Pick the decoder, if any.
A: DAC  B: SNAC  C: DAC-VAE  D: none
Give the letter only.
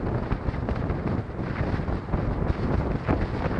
D